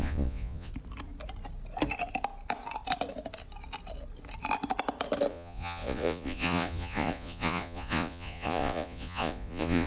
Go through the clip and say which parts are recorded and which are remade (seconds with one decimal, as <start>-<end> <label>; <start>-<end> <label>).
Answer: 0.0-0.7 remade; 0.7-5.3 recorded; 5.3-9.9 remade